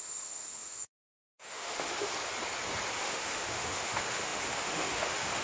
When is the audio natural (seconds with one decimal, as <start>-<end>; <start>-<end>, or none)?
2.1-3.0